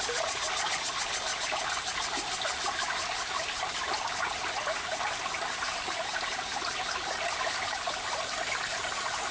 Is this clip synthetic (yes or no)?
no